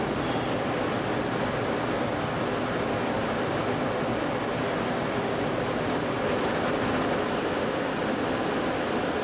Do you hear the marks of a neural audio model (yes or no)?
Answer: no